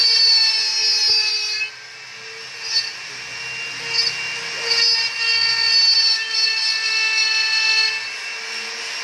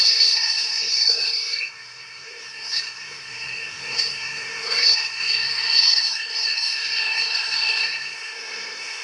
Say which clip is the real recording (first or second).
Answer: first